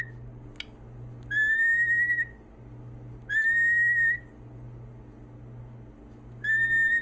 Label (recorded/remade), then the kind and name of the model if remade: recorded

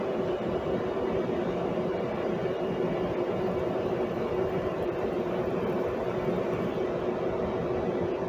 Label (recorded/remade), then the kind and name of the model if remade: recorded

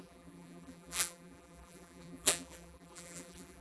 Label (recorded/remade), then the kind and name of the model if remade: remade, vocoder, BigVGAN v2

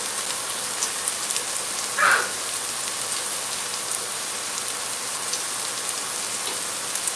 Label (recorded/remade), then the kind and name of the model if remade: recorded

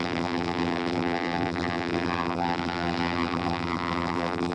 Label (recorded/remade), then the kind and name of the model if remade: remade, vocoder, BigVGAN v2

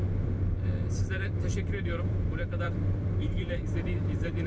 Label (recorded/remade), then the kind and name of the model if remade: remade, vocoder, BigVGAN v2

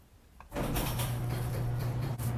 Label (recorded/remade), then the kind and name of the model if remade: remade, vocoder, BigVGAN v2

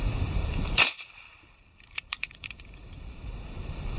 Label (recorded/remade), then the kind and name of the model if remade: remade, vocoder, BigVGAN v2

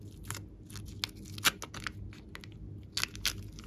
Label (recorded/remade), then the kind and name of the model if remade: recorded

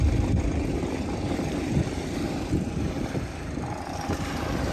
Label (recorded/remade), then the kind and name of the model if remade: remade, vocoder, BigVGAN v2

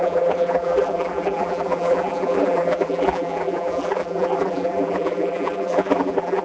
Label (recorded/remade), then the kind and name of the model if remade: remade, vocoder, BigVGAN v2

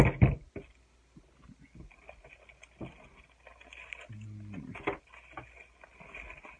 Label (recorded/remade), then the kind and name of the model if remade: recorded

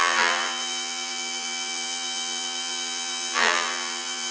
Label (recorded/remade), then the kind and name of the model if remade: remade, vocoder, BigVGAN v2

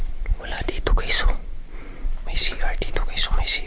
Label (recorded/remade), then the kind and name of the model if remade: remade, vocoder, BigVGAN v2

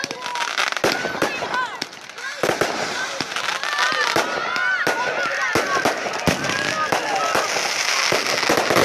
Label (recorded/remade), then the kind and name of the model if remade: recorded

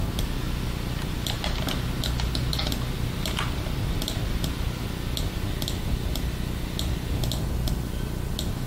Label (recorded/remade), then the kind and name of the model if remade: recorded